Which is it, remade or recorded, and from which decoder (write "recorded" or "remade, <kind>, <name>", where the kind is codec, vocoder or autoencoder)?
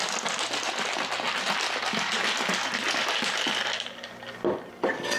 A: recorded